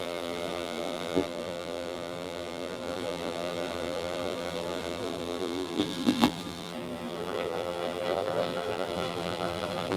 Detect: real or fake fake